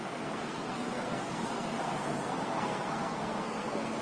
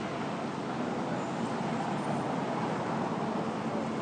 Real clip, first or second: second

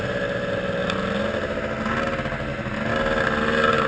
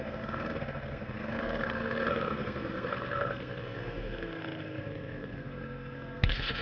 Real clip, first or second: first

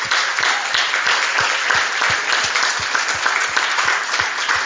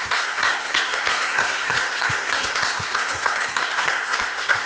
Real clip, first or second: first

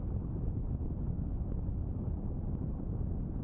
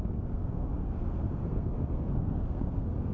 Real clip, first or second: first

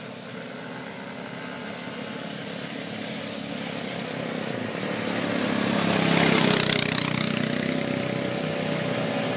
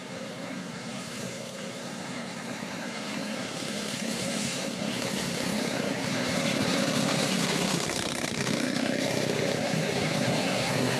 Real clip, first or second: first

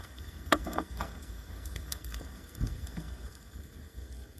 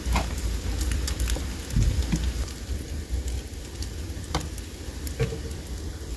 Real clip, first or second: second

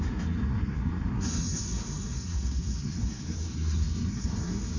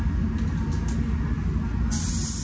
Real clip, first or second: second